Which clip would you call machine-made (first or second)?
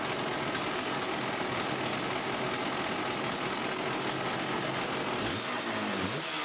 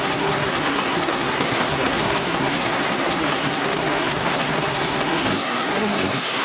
second